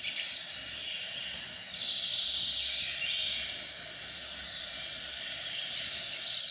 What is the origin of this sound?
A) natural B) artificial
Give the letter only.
A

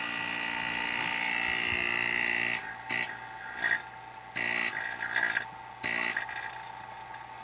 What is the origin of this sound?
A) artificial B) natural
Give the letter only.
B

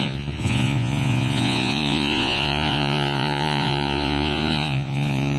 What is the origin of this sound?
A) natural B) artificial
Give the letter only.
B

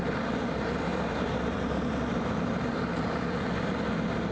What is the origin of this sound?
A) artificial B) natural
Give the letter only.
A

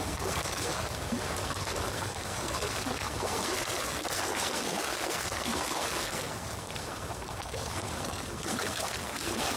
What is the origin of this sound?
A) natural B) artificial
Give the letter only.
B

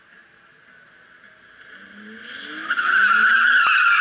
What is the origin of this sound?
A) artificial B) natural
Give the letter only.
B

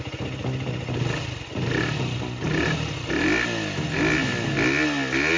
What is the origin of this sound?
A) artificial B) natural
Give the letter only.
B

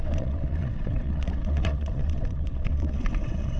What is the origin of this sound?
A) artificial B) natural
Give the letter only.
A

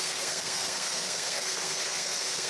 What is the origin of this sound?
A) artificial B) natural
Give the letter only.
A